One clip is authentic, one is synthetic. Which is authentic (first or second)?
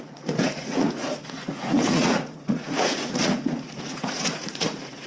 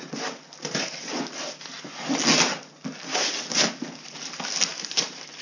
second